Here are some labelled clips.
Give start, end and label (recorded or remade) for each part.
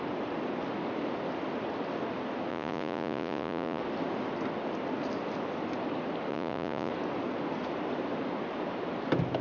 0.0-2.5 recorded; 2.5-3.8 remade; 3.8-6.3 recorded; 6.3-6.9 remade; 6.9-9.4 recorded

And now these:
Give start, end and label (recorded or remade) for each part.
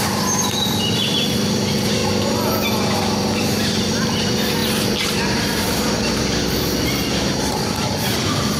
0.0-2.0 remade; 2.0-3.8 recorded; 3.8-8.6 remade